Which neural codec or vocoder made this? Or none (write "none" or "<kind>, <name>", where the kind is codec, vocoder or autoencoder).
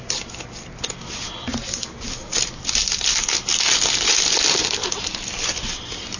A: none